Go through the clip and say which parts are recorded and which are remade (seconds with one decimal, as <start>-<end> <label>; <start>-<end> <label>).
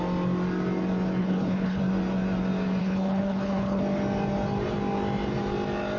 0.0-1.2 recorded; 1.2-1.8 remade; 1.8-2.8 recorded; 2.8-3.8 remade; 3.8-6.0 recorded